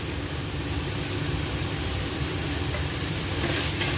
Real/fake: real